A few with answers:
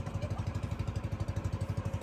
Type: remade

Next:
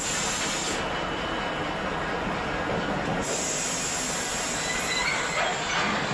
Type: recorded